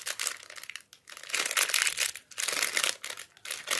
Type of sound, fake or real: real